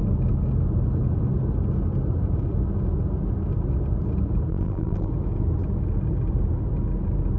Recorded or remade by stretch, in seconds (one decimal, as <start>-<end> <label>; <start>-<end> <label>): 0.0-4.5 recorded; 4.5-5.1 remade; 5.1-7.4 recorded